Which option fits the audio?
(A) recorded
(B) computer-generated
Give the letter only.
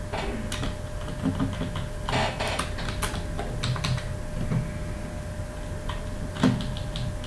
A